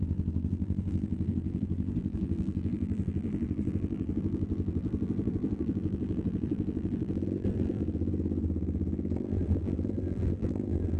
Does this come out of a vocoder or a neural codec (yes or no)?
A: yes